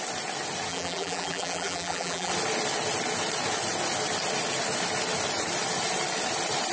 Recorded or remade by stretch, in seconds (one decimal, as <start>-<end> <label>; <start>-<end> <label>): 0.0-0.7 recorded; 0.7-2.3 remade; 2.3-6.7 recorded